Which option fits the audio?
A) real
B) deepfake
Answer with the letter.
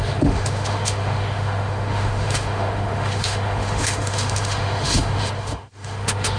B